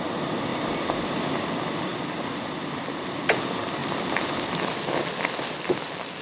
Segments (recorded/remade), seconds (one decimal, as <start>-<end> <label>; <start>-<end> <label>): 0.0-0.5 recorded; 0.5-1.5 remade; 1.5-3.8 recorded; 3.8-6.2 remade